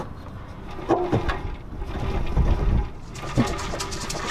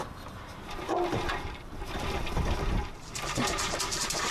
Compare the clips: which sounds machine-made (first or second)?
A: second